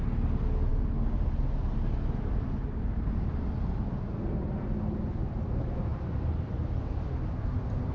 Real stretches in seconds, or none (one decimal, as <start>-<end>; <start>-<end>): 0.0-5.9; 6.5-7.9